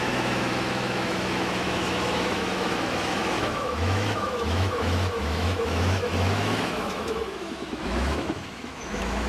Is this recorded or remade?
remade